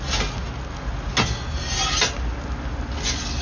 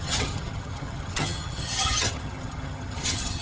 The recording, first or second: first